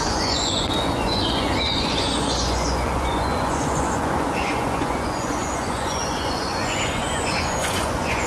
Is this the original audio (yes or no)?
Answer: no